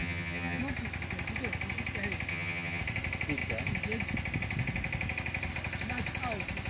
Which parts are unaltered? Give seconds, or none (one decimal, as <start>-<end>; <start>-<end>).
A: 0.6-2.3; 2.8-6.7